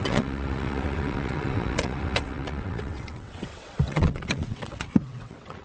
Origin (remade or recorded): remade